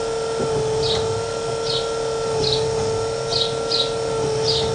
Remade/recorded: recorded